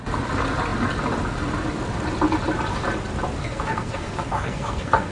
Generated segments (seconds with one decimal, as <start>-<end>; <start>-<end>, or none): 3.4-5.1